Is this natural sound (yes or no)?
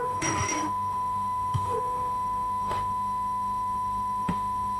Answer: no